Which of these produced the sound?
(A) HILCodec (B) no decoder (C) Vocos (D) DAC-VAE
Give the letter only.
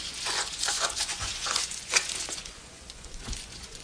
C